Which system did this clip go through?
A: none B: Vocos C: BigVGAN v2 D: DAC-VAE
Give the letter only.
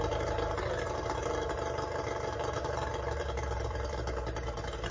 C